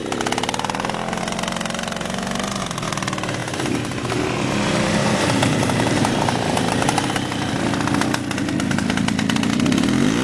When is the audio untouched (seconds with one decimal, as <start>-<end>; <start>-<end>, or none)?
0.0-3.4; 4.2-5.0; 7.5-10.2

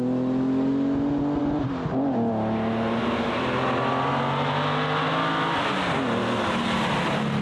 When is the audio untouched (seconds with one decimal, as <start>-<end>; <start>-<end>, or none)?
0.0-1.4; 2.3-7.4

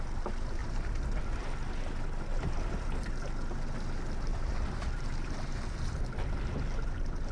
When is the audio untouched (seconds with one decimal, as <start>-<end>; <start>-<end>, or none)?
0.0-0.6; 1.2-2.3; 3.1-4.3; 6.3-7.3